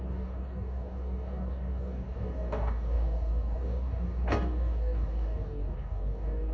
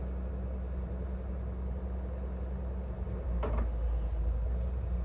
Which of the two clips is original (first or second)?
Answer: second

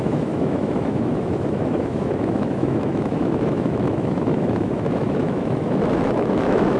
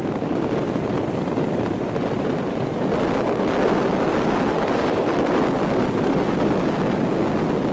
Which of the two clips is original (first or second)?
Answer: second